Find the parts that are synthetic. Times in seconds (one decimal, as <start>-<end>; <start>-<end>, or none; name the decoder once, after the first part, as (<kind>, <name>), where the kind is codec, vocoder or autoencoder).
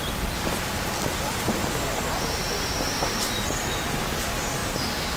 0.0-1.6 (vocoder, BigVGAN v2); 3.9-4.6